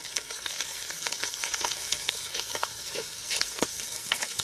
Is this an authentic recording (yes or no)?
no